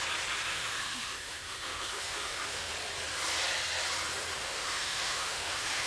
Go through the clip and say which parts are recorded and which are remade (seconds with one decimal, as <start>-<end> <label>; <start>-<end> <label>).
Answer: 0.0-0.5 recorded; 0.5-2.7 remade; 2.7-4.4 recorded; 4.4-5.9 remade